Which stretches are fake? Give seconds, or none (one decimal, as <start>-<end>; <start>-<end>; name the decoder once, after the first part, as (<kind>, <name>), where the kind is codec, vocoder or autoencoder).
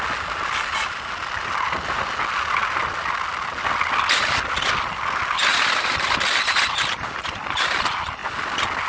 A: none